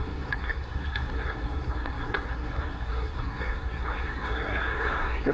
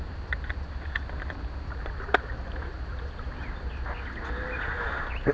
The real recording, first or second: second